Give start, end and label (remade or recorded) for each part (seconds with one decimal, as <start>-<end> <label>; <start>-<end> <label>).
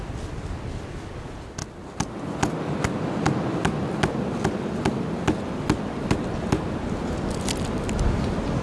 0.0-8.6 recorded